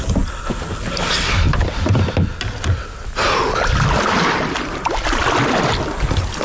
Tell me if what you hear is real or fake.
real